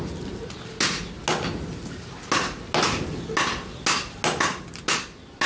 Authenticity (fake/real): real